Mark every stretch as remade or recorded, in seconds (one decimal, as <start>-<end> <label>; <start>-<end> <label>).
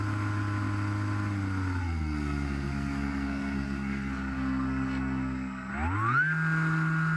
0.0-1.8 recorded; 1.8-5.7 remade; 5.7-7.2 recorded